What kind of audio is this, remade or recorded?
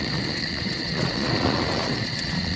remade